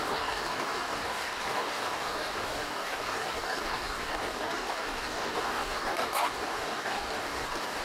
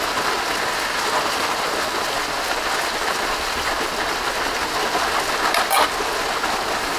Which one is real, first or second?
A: second